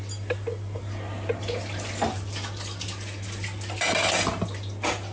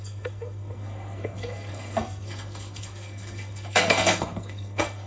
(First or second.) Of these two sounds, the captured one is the first